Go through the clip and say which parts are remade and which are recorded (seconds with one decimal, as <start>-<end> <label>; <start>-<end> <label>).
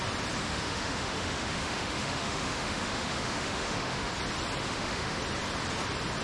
0.0-0.4 recorded; 0.4-4.1 remade; 4.1-4.6 recorded; 4.6-5.2 remade; 5.2-6.2 recorded